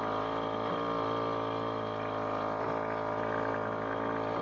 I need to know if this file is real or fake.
real